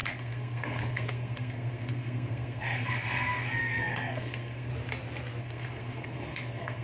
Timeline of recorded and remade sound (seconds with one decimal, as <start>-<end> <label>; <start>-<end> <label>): 0.0-4.7 remade; 4.7-5.4 recorded; 5.4-6.8 remade